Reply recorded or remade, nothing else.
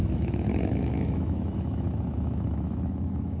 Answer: remade